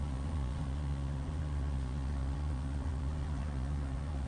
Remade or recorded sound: remade